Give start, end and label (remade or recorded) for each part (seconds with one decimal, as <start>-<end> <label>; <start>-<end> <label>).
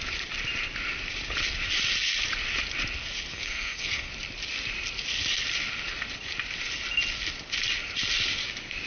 0.0-3.3 recorded; 3.3-4.1 remade; 4.1-8.9 recorded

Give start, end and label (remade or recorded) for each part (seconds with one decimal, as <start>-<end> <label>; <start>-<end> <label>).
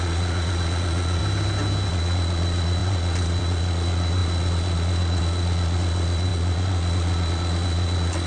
0.0-1.2 remade; 1.2-1.9 recorded; 1.9-8.3 remade